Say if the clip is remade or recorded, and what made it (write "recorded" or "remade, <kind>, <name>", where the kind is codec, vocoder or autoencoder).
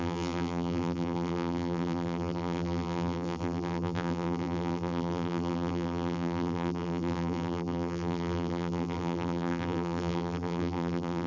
remade, vocoder, BigVGAN v2